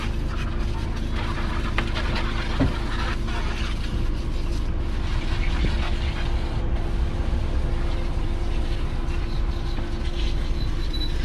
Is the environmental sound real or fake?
real